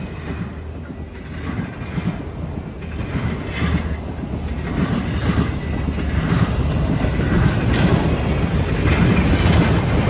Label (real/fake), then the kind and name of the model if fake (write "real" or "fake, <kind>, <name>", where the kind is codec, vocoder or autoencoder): real